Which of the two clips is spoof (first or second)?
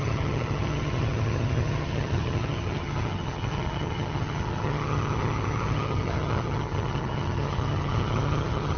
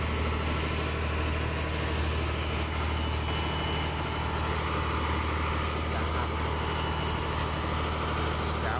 first